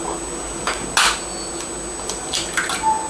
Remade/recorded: recorded